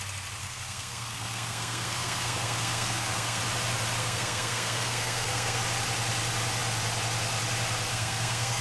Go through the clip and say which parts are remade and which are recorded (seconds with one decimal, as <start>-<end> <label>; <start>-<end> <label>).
0.0-0.4 recorded; 0.4-3.4 remade; 3.4-4.0 recorded; 4.0-5.6 remade; 5.6-7.9 recorded; 7.9-8.6 remade

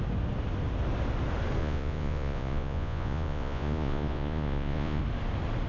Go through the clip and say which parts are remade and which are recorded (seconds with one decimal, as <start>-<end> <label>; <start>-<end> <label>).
0.0-1.6 recorded; 1.6-5.0 remade; 5.0-5.7 recorded

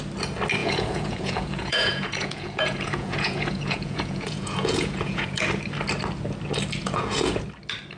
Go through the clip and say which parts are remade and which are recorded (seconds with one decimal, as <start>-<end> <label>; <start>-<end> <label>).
0.0-0.6 recorded; 0.6-5.4 remade; 5.4-6.8 recorded; 6.8-7.4 remade; 7.4-8.0 recorded

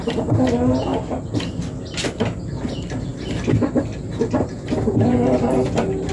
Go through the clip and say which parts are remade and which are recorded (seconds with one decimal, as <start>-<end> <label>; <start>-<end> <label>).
0.0-6.1 recorded

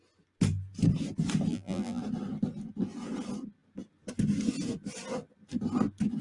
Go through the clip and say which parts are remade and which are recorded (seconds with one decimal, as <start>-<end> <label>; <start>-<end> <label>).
0.0-1.5 recorded; 1.5-2.0 remade; 2.0-6.2 recorded